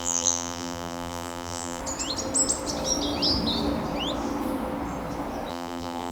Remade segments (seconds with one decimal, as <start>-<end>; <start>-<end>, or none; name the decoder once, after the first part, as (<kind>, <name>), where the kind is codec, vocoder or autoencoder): 0.0-1.8 (vocoder, BigVGAN v2); 5.5-6.1